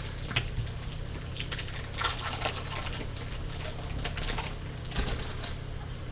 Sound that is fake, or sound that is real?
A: real